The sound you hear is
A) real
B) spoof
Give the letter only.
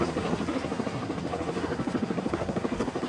B